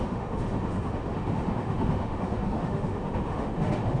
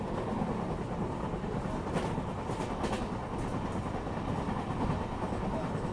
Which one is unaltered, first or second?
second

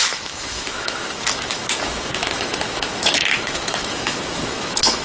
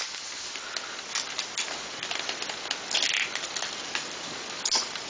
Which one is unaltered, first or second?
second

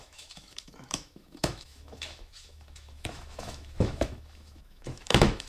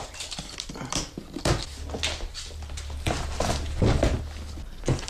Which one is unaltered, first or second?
second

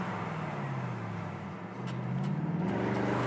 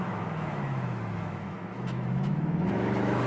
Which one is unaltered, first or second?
first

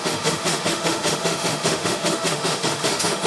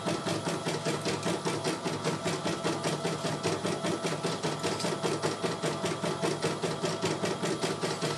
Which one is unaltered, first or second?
second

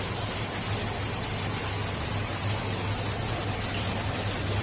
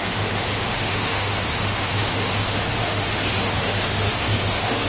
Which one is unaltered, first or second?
first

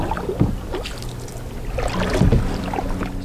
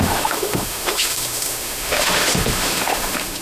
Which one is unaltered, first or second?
first